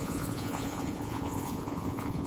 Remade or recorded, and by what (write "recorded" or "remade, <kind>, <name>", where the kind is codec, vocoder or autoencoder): remade, vocoder, Vocos